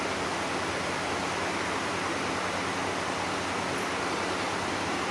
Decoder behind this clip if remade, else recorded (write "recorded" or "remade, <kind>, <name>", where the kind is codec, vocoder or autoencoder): recorded